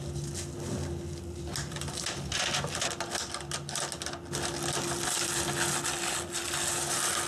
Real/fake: real